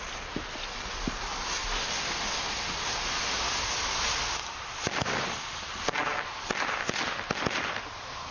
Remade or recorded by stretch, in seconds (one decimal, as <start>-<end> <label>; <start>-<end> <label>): 0.0-8.3 recorded